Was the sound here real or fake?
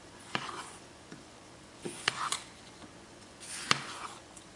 fake